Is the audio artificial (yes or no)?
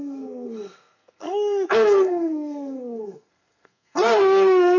yes